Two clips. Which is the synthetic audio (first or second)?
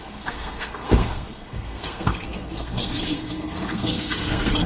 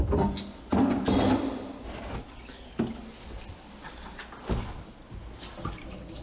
first